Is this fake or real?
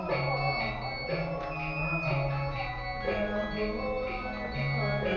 real